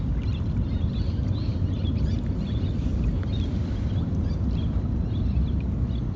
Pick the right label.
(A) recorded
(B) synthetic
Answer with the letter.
A